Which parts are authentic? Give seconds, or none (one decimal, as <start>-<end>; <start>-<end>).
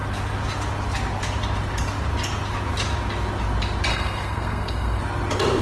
0.0-3.9; 5.0-5.6